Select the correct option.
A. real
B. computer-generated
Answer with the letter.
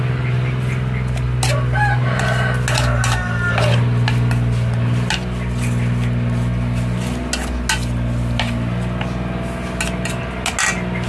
A